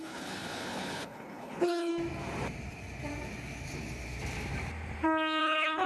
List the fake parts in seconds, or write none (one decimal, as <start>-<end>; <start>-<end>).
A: 0.0-1.9; 5.4-5.9

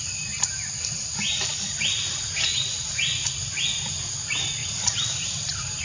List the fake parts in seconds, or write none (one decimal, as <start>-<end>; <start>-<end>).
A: none

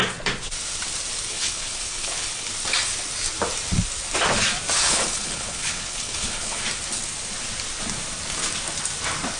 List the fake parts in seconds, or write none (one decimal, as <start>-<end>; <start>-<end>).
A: 1.3-2.5; 4.8-6.6

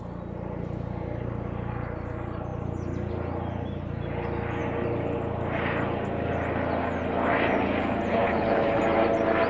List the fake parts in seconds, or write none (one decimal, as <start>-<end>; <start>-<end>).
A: 8.1-8.8

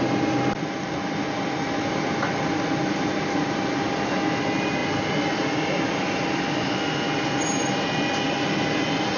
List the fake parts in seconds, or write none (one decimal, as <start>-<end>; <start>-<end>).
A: none

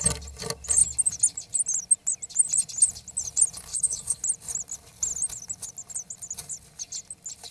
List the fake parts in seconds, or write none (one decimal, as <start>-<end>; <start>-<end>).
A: 3.7-4.2